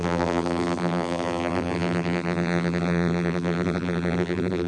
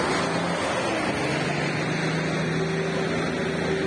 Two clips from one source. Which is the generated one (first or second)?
first